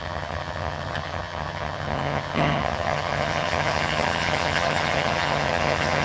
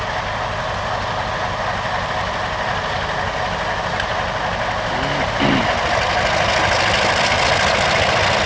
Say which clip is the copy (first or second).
first